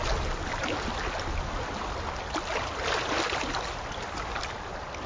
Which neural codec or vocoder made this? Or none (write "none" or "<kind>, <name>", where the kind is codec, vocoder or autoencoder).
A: none